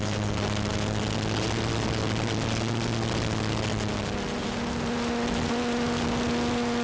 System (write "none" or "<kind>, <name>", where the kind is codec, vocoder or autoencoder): none